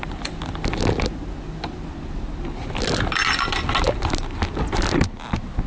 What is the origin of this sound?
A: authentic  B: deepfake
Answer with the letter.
A